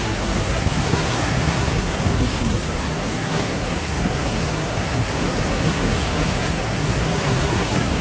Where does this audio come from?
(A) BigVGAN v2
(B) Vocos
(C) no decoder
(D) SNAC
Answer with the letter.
D